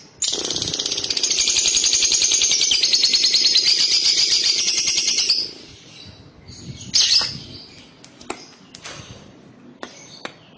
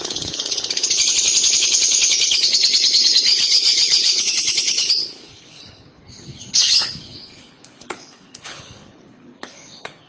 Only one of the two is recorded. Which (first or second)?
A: first